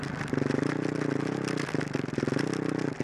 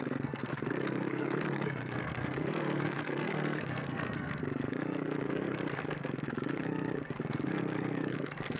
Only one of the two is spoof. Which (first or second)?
second